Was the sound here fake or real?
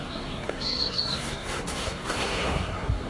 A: fake